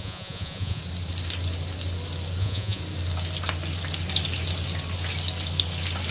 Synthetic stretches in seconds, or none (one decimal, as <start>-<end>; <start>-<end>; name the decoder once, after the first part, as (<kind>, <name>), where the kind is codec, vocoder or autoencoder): 0.0-0.8 (vocoder, Vocos); 2.4-2.8